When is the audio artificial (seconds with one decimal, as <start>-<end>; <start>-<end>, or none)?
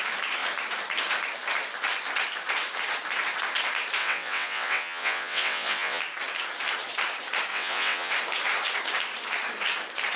4.0-6.0; 7.5-8.1